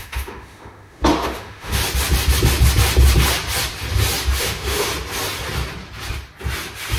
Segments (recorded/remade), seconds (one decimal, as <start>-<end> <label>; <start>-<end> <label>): 0.0-1.8 remade; 1.8-4.4 recorded; 4.4-4.9 remade; 4.9-7.0 recorded